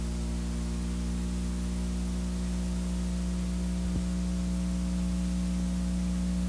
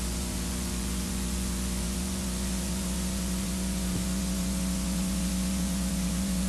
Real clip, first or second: first